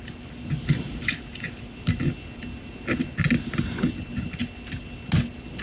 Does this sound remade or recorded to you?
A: recorded